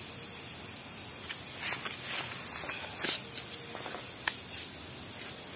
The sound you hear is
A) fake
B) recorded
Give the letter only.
B